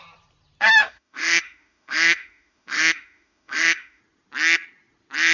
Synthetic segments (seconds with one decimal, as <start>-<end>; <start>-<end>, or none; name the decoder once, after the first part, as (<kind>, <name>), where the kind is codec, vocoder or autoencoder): 0.8-4.0 (autoencoder, DAC-VAE)